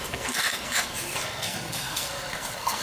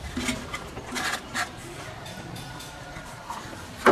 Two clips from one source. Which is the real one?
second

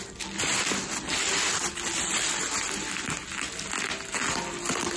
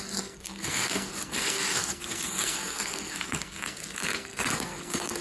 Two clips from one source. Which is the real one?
first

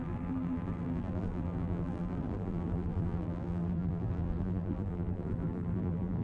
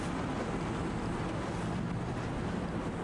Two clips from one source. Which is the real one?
second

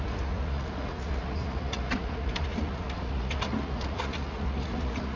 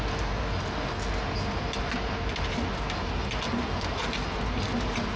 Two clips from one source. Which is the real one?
second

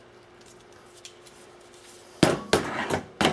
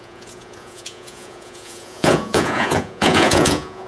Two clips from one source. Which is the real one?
first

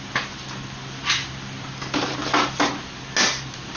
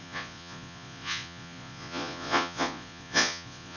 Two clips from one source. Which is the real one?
first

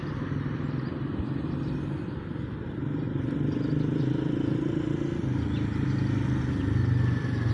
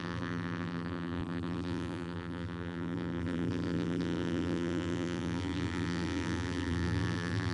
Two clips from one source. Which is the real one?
first